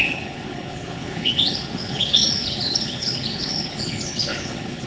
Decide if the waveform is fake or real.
fake